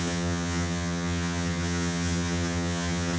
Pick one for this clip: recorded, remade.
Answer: remade